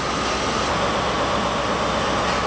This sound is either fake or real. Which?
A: real